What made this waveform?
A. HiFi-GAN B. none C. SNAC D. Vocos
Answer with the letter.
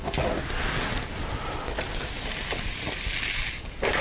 B